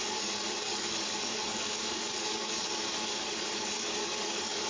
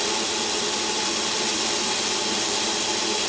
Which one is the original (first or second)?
second